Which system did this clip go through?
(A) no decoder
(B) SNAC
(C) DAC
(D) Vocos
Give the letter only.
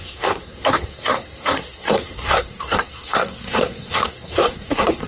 B